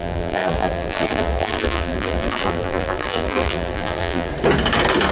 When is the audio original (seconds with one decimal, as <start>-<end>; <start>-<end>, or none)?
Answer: 4.3-5.1